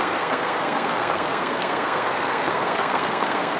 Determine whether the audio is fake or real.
fake